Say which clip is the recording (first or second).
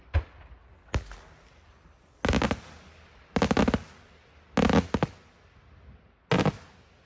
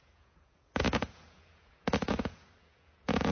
first